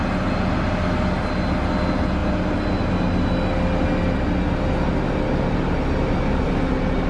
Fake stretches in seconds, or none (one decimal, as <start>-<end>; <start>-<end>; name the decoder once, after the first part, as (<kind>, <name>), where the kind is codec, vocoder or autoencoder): none